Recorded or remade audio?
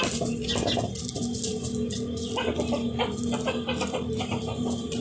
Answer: recorded